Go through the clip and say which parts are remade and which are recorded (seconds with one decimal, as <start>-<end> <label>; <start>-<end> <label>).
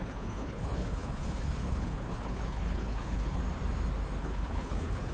0.0-3.4 remade; 3.4-4.2 recorded; 4.2-5.1 remade